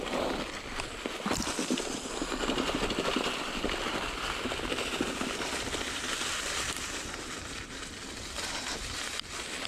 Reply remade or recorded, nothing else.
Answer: recorded